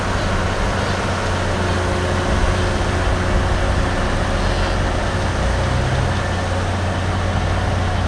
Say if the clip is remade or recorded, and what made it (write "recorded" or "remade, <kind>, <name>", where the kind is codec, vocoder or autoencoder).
recorded